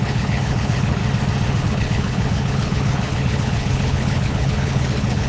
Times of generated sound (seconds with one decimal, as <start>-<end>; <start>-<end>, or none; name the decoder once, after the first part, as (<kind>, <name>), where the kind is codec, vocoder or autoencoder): 0.0-1.0 (codec, HILCodec); 1.6-5.3